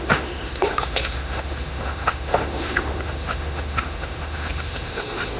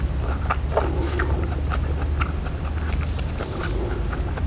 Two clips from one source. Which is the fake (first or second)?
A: first